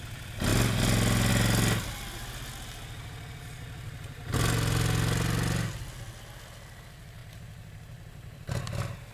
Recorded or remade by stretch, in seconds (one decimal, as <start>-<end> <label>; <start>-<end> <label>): 0.0-7.2 recorded; 7.2-8.6 remade; 8.6-9.1 recorded